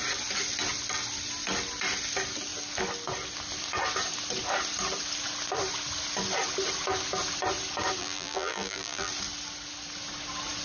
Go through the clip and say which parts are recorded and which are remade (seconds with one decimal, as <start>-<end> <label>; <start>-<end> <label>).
0.0-8.0 recorded; 8.0-9.1 remade; 9.1-10.6 recorded